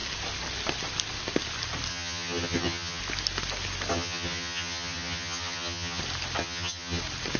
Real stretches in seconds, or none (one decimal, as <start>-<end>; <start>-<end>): 0.0-1.9; 3.0-3.9; 6.0-6.4; 7.0-7.4